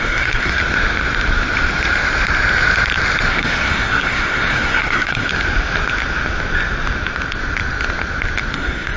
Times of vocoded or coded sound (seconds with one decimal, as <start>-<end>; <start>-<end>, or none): 0.0-0.6; 3.3-5.3; 8.5-9.0